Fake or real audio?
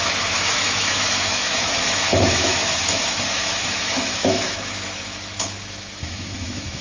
fake